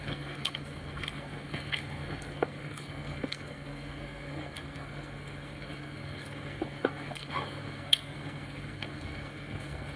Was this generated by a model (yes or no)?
yes